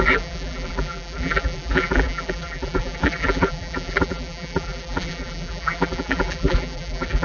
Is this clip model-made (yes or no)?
yes